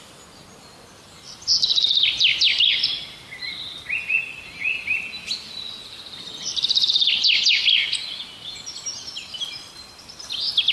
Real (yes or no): yes